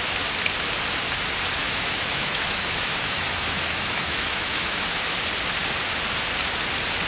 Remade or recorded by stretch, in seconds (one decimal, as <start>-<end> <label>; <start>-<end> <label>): 0.0-1.6 recorded; 1.6-5.1 remade; 5.1-7.1 recorded